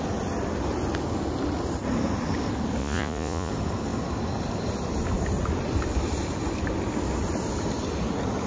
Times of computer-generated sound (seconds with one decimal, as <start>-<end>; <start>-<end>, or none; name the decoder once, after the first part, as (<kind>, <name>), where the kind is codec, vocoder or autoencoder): 2.8-3.5 (vocoder, Vocos)